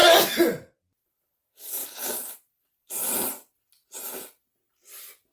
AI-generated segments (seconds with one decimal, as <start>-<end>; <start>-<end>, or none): none

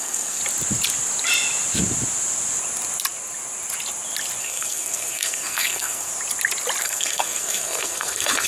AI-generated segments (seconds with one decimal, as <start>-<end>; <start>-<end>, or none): 0.0-0.4; 4.4-6.1; 6.8-8.5

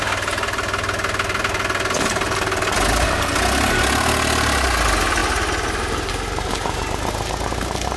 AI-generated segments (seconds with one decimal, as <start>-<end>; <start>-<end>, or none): none

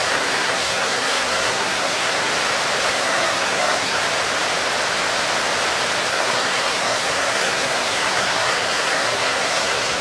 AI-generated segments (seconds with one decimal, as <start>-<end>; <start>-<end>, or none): 0.0-2.3; 2.8-4.0; 6.1-10.0

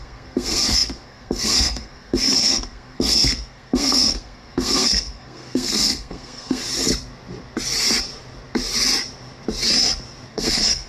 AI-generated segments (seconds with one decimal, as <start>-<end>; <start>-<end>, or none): 0.0-6.6; 10.3-10.9

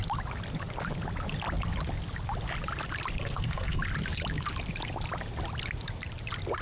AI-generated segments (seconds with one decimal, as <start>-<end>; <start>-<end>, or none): 3.2-3.8

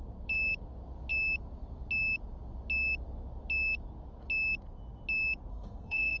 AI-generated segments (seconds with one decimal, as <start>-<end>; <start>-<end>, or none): 5.5-6.2

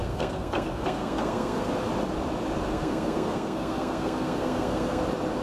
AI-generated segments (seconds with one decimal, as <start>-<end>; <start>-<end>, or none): 0.0-1.7; 2.7-5.0